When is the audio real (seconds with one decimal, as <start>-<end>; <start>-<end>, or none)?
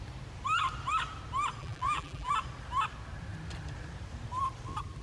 0.0-1.6; 2.3-5.0